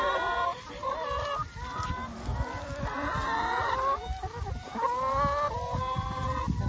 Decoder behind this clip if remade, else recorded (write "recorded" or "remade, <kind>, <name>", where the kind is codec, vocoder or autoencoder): recorded